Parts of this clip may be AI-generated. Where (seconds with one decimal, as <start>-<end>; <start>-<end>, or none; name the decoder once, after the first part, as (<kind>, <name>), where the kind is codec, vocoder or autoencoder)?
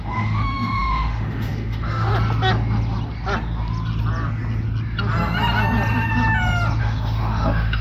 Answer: 0.0-2.1 (autoencoder, DAC-VAE); 6.8-7.8